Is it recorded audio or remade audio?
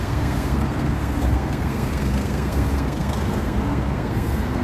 remade